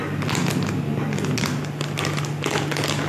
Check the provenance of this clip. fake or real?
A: real